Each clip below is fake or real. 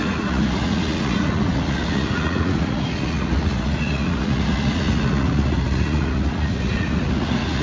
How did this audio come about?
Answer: fake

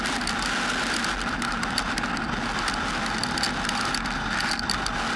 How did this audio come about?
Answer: real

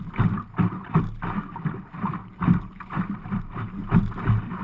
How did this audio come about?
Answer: real